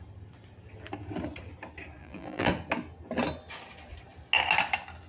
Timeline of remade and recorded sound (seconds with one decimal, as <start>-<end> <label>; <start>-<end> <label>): 0.0-2.0 recorded; 2.0-2.5 remade; 2.5-5.1 recorded